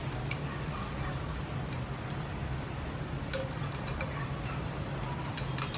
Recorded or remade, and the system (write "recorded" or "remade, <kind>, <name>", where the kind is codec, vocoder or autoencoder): recorded